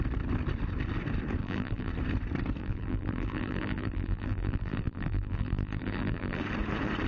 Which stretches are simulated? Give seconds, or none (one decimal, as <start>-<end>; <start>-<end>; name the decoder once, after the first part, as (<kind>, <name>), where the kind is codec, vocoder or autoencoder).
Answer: 1.4-1.9 (vocoder, BigVGAN v2); 2.6-6.4